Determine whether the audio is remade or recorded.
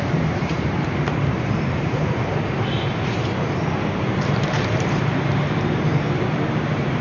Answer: remade